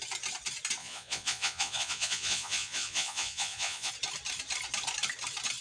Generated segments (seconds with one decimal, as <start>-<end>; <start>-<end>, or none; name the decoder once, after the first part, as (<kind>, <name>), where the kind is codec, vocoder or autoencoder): 0.8-3.9 (vocoder, Vocos)